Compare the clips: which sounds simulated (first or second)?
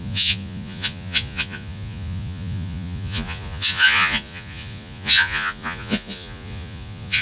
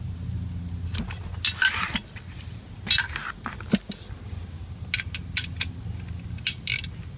first